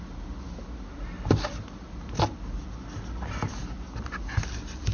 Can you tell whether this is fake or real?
real